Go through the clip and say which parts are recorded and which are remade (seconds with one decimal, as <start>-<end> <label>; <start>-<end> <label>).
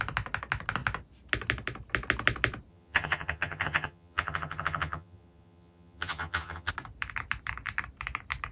0.0-2.7 recorded; 2.7-6.7 remade; 6.7-8.5 recorded